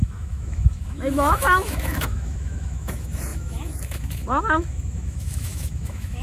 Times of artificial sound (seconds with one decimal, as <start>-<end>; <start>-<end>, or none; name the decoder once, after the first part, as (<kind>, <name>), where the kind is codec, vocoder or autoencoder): 0.0-6.2 (autoencoder, DAC-VAE)